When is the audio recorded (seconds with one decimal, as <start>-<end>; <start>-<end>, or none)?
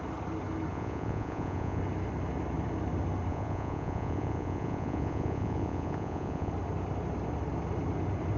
0.0-0.7; 1.8-3.3; 6.5-8.4